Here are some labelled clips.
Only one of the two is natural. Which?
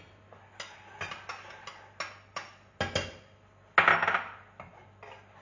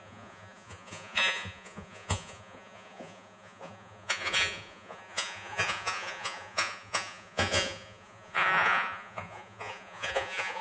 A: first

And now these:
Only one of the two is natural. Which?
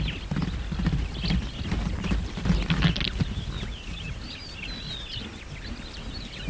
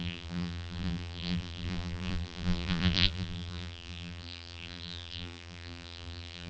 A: first